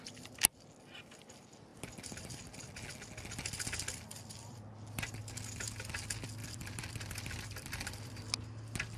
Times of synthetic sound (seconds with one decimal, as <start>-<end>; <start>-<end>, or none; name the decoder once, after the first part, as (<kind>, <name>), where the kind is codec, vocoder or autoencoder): 1.7-2.3 (vocoder, BigVGAN v2); 4.1-5.2; 6.4-8.1